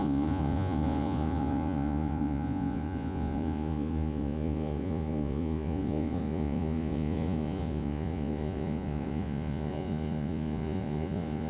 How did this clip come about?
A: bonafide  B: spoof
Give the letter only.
B